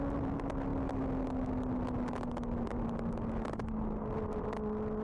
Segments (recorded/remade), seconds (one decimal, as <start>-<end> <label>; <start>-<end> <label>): 0.0-5.0 recorded